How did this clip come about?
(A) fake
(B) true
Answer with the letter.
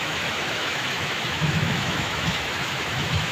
A